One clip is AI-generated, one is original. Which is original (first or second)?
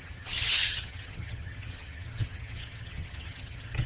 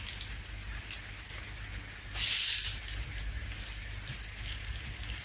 second